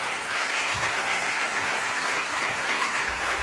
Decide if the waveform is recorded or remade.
remade